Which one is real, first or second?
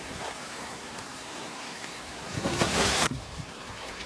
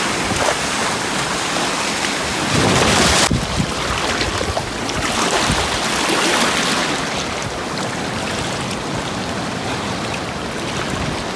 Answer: second